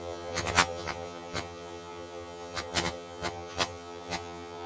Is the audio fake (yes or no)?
yes